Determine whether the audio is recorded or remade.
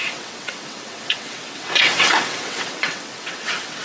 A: remade